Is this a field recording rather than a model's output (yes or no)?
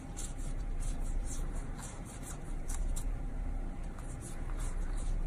no